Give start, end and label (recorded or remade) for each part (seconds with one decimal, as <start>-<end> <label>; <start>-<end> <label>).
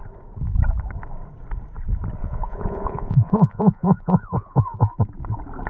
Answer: 0.0-2.2 recorded; 2.2-5.0 remade; 5.0-5.7 recorded